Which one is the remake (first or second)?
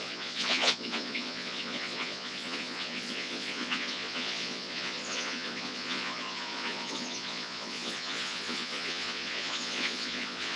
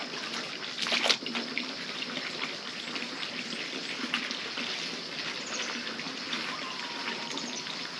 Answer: first